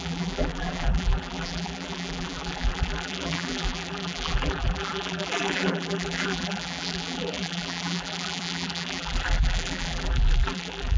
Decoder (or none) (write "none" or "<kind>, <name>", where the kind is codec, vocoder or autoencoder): vocoder, BigVGAN v2